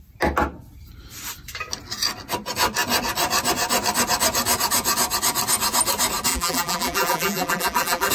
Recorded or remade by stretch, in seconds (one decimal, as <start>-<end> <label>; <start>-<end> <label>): 0.0-6.3 recorded; 6.3-8.1 remade